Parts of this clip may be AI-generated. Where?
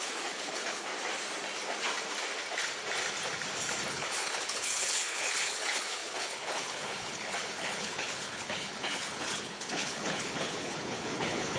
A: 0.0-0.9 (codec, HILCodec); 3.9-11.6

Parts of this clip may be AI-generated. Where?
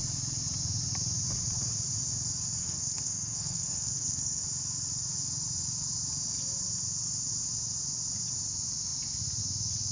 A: 2.6-4.4 (codec, SNAC)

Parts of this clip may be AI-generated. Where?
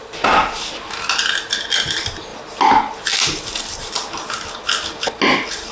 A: 0.0-2.3 (vocoder, BigVGAN v2)